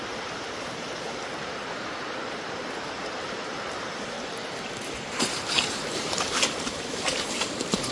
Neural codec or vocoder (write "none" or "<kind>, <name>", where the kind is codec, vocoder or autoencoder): vocoder, BigVGAN v2